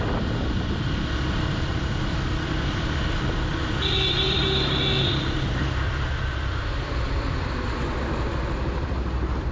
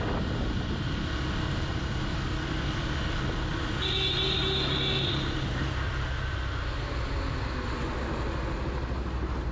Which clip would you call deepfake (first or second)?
first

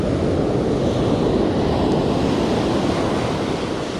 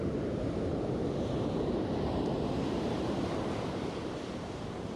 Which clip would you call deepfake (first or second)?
second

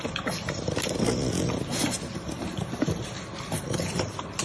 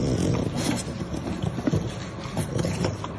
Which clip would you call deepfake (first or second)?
first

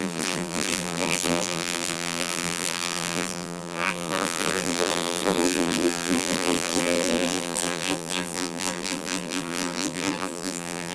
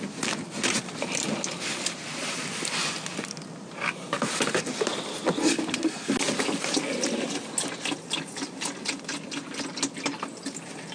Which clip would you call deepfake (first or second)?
first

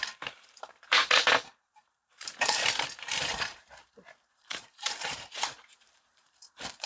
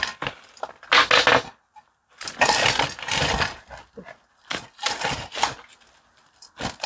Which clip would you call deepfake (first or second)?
first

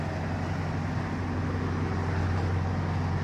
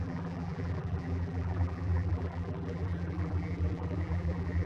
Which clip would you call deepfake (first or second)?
second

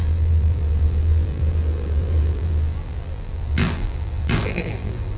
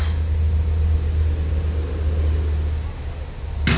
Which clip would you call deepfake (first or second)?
first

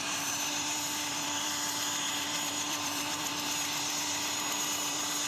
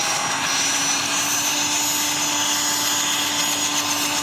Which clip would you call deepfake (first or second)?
first